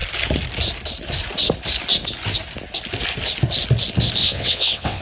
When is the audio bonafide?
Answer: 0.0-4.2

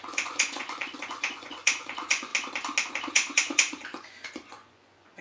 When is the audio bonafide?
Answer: 2.3-2.9

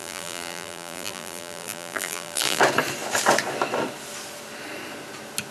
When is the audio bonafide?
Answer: 2.6-5.5

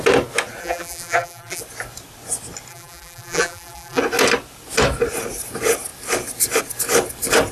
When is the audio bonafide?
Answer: 0.0-0.6; 1.6-2.7; 4.0-7.5